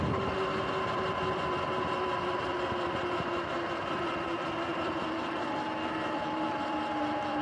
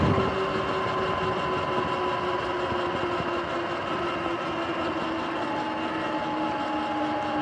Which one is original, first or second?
second